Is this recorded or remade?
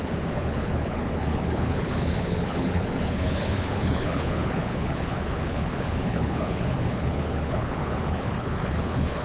remade